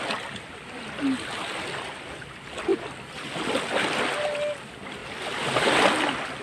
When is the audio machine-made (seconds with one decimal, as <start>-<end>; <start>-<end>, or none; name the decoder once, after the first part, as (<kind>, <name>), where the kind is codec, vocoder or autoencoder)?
none